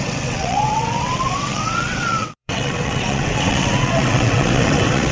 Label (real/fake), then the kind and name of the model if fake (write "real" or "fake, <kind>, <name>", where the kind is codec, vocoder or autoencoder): fake, vocoder, WaveNeXt